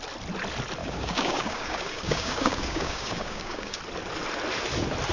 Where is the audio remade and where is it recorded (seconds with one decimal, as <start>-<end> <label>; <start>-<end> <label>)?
0.0-0.8 recorded; 0.8-3.8 remade; 3.8-5.1 recorded